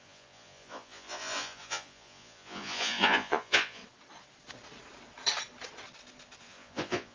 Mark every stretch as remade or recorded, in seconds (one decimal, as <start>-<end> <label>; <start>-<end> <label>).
0.0-3.8 remade; 3.8-6.4 recorded; 6.4-7.1 remade